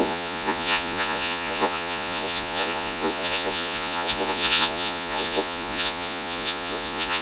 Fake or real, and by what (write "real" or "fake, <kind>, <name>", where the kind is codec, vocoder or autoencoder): fake, vocoder, Vocos